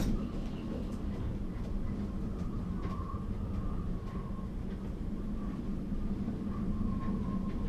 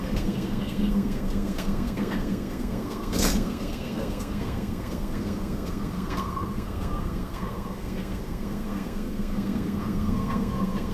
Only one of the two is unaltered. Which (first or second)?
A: first